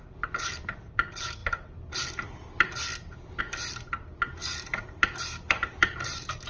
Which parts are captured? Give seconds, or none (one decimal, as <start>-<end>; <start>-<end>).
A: 2.9-3.4